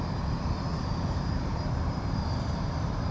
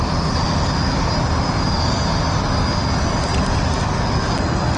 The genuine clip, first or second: second